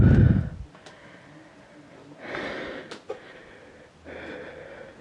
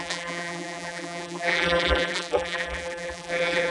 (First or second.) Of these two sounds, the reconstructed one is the second